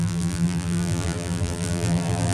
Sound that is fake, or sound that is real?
fake